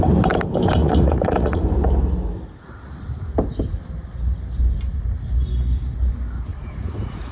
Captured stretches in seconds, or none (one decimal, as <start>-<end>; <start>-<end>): 0.0-0.8; 1.6-6.5